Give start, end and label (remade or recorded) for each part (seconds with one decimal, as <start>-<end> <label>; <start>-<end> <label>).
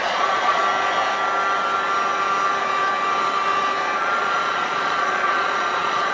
0.0-0.6 remade; 0.6-4.0 recorded; 4.0-6.1 remade